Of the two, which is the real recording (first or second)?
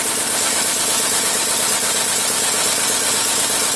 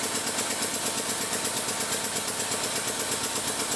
second